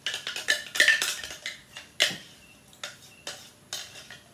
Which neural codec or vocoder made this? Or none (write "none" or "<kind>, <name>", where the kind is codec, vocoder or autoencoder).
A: none